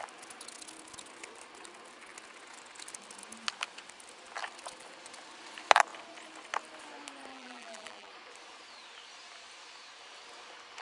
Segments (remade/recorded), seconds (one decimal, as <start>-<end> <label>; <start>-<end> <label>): 0.0-7.3 recorded; 7.3-8.1 remade; 8.1-10.8 recorded